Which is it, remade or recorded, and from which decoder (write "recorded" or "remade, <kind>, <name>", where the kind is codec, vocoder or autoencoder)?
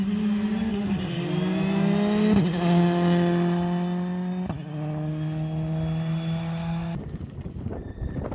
recorded